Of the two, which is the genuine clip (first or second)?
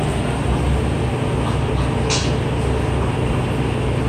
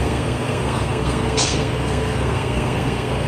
first